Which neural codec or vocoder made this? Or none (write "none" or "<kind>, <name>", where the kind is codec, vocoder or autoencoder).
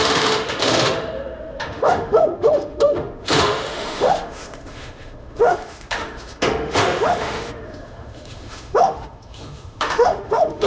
autoencoder, DAC-VAE